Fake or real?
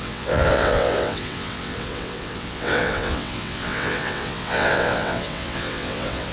fake